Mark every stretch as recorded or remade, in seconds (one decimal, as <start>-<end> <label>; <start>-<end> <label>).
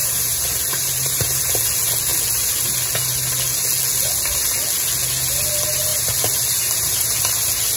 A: 0.0-1.4 remade; 1.4-5.9 recorded; 5.9-7.2 remade; 7.2-7.8 recorded